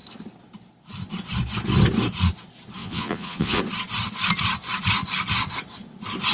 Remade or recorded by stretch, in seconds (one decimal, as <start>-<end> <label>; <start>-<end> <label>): 0.0-2.8 recorded; 2.8-3.6 remade; 3.6-6.3 recorded

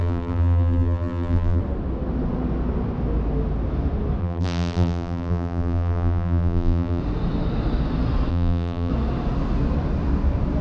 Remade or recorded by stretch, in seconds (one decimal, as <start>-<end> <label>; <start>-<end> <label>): 0.0-1.6 remade; 1.6-4.2 recorded; 4.2-7.0 remade; 7.0-8.3 recorded; 8.3-8.9 remade; 8.9-10.6 recorded

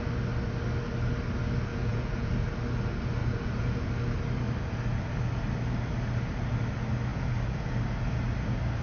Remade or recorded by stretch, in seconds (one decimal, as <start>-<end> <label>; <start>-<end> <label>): 0.0-1.7 recorded; 1.7-2.3 remade; 2.3-3.2 recorded; 3.2-3.9 remade; 3.9-7.1 recorded; 7.1-7.7 remade; 7.7-8.8 recorded

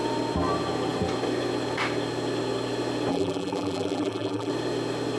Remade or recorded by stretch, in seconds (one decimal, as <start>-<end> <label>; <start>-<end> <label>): 0.0-3.1 recorded; 3.1-4.5 remade; 4.5-5.2 recorded

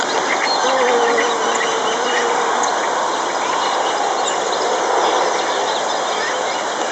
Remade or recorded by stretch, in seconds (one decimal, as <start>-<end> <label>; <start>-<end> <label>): 0.0-6.9 recorded